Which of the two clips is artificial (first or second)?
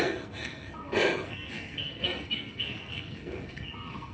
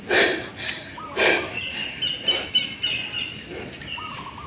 first